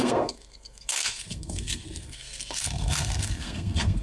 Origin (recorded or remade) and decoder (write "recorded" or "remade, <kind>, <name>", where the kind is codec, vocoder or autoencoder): remade, codec, SNAC